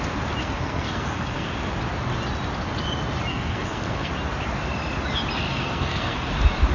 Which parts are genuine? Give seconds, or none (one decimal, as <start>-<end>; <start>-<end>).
0.0-0.4; 1.5-3.3; 4.1-5.5; 6.3-6.7